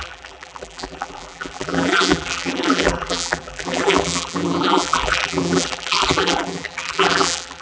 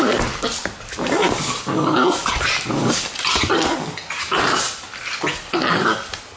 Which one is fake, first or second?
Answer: first